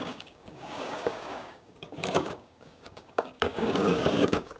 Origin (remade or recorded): remade